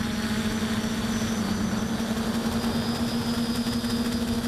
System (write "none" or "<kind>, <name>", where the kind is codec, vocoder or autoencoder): none